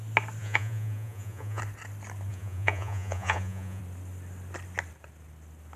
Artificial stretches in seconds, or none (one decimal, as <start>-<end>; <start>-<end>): 0.4-1.6; 2.3-3.8